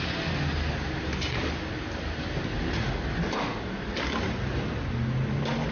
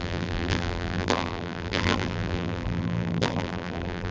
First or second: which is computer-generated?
second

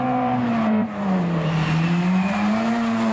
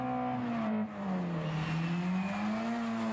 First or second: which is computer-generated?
first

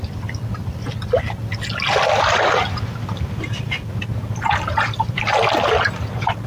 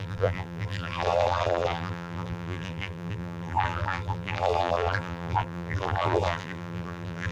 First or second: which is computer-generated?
second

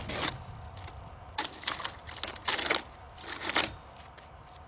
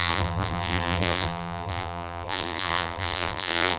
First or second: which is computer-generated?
second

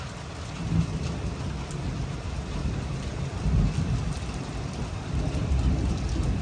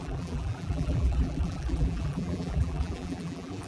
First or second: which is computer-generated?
second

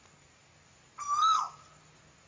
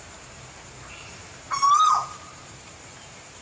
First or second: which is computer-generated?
second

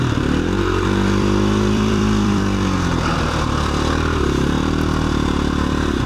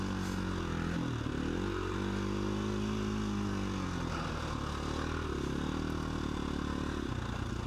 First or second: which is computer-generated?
first